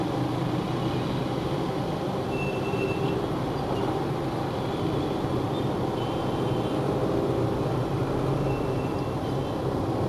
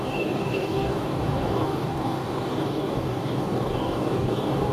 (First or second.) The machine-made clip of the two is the second